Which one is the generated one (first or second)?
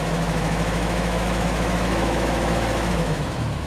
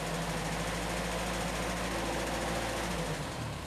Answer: first